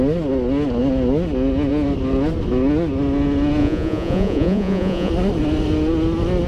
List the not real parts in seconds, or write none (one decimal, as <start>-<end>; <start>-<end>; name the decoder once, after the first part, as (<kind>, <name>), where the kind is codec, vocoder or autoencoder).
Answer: 3.6-5.1 (vocoder, Vocos)

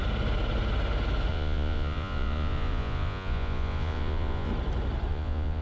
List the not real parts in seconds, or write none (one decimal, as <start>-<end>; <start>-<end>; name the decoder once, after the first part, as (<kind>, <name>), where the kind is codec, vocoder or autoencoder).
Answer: 1.3-4.5 (vocoder, Vocos); 5.1-5.6

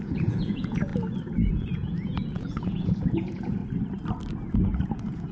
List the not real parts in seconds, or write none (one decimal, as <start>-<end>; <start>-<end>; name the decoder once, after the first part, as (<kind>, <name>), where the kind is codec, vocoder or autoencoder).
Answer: 0.0-0.9 (vocoder, Vocos); 1.5-3.6; 4.6-5.3

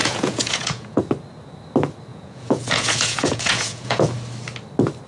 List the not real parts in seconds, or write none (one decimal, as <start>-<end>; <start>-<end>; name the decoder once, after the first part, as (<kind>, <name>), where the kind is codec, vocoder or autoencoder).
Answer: 0.0-1.0 (vocoder, Vocos); 2.1-4.1

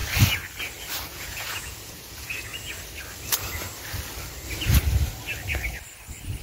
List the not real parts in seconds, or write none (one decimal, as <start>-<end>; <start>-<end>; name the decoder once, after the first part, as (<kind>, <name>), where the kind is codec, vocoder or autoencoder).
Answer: 1.1-2.5 (vocoder, Vocos)

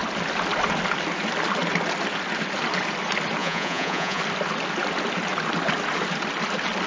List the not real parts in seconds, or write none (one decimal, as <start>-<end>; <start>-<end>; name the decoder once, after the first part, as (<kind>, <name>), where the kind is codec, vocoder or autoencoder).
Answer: 3.4-4.2 (vocoder, Vocos)

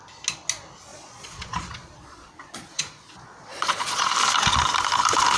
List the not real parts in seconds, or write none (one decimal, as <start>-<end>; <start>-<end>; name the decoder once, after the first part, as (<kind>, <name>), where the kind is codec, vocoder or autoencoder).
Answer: 0.9-4.1 (vocoder, Vocos)

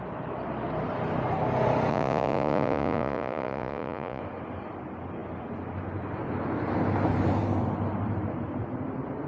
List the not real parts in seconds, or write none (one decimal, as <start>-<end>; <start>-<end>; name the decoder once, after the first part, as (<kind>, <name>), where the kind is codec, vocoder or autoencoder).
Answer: 1.9-4.2 (vocoder, Vocos)